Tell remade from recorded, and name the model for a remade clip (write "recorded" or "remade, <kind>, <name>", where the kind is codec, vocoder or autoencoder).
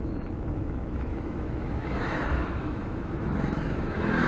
remade, autoencoder, DAC-VAE